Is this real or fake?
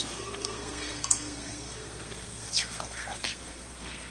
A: fake